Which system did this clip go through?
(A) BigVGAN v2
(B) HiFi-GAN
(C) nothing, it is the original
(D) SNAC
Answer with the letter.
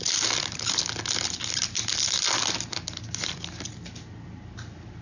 C